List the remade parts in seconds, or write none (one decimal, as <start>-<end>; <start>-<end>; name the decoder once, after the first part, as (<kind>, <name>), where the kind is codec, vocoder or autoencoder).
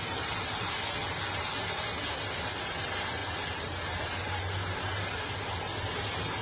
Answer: none